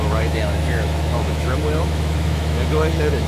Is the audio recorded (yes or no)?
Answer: no